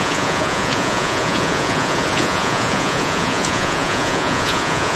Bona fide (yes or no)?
no